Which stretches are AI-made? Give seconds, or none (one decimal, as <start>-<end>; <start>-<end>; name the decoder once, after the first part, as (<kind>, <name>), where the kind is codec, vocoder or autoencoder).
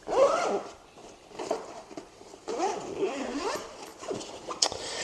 1.0-2.5 (vocoder, BigVGAN v2); 3.9-5.0